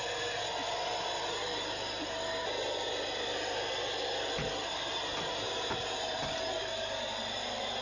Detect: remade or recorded recorded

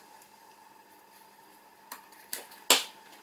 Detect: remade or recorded recorded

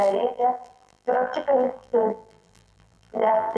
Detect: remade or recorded remade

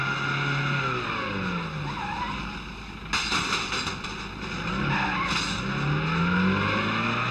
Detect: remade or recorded recorded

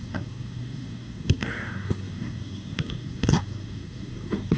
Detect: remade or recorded remade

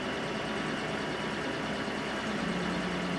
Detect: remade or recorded recorded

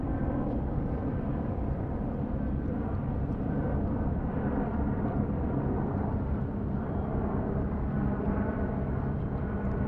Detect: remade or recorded remade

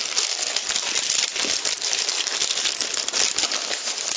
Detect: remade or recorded recorded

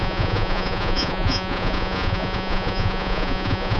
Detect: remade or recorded remade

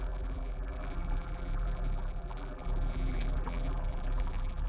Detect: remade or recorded remade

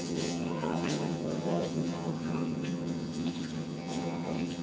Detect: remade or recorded remade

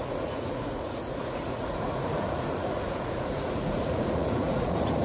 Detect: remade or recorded remade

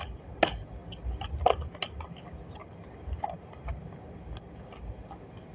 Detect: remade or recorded recorded